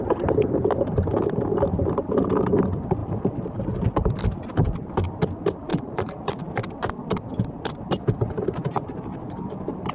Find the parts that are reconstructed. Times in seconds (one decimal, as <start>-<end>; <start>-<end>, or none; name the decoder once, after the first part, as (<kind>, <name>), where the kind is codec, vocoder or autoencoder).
5.7-6.3 (vocoder, Vocos)